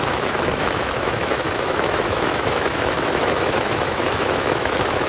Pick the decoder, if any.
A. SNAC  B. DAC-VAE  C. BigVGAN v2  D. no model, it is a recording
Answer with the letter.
B